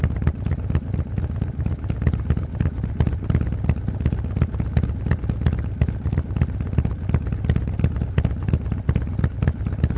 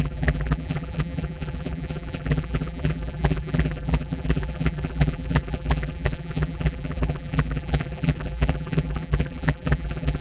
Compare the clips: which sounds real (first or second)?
first